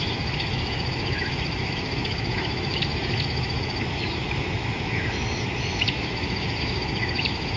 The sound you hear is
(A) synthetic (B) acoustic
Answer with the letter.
A